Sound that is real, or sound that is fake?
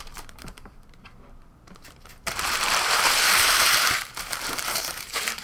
fake